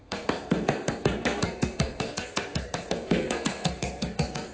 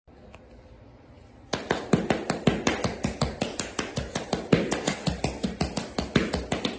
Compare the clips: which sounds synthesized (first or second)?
first